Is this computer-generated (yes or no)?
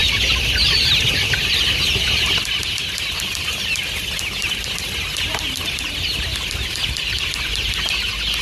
no